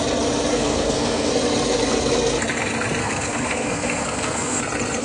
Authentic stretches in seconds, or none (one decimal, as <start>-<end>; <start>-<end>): 0.0-0.5; 1.3-3.0; 4.6-5.0